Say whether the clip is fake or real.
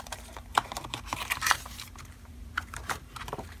fake